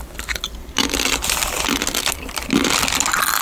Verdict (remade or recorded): recorded